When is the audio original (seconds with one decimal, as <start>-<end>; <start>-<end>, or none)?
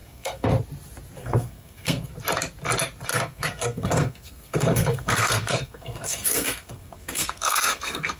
0.5-1.2; 2.1-3.1